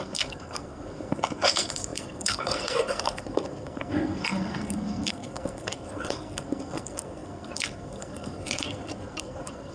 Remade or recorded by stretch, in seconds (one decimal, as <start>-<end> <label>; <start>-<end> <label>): 0.0-9.7 remade